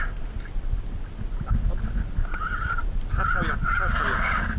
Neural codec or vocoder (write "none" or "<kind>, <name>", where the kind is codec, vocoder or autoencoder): none